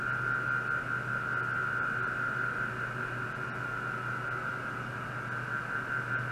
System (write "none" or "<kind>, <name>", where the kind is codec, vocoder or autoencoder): none